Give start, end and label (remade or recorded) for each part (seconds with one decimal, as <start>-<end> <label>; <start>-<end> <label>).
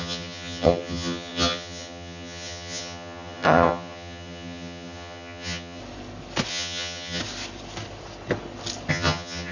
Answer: 0.0-5.8 remade; 5.8-6.5 recorded; 6.5-7.2 remade; 7.2-8.9 recorded; 8.9-9.5 remade